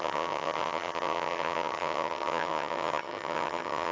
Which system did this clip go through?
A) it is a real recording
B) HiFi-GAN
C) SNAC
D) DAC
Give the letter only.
B